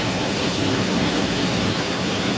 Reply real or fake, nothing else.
fake